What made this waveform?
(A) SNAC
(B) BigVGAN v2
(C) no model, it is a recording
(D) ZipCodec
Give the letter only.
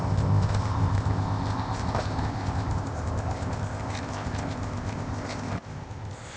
D